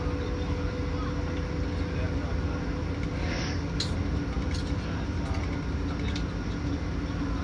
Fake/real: real